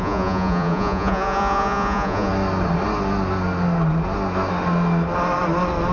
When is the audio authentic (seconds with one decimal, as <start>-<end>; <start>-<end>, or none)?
2.3-5.9